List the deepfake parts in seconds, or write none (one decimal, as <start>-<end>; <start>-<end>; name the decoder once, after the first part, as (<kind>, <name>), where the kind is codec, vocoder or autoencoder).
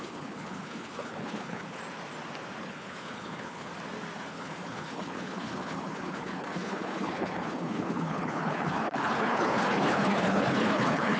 0.0-1.8 (codec, HILCodec); 2.6-3.7; 4.3-11.2